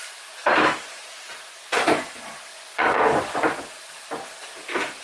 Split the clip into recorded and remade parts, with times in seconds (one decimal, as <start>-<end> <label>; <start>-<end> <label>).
0.0-2.5 recorded; 2.5-3.6 remade; 3.6-5.0 recorded

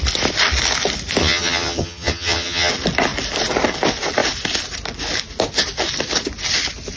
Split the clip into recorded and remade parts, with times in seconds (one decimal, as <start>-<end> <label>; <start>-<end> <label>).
0.0-1.2 recorded; 1.2-2.7 remade; 2.7-7.0 recorded